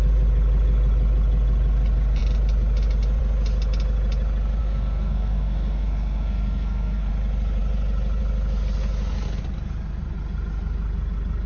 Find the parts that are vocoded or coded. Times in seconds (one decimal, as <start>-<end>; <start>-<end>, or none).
4.6-7.1